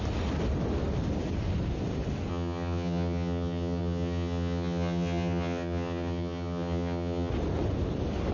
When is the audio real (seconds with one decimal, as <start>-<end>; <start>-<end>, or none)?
0.0-2.3; 7.3-8.3